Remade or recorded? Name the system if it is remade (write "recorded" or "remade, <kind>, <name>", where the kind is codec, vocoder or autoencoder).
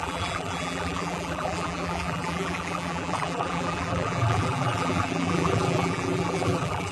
remade, vocoder, BigVGAN v2